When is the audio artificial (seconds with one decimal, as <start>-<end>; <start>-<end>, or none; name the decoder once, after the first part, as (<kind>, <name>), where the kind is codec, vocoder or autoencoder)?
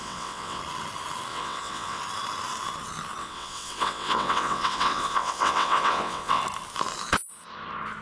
0.0-0.6 (vocoder, WaveNeXt); 1.3-2.0; 3.2-6.4